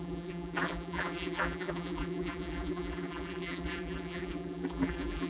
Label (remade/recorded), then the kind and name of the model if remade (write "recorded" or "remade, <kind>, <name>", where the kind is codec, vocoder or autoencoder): remade, vocoder, BigVGAN v2